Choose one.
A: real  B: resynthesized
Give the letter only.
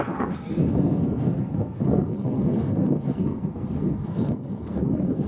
B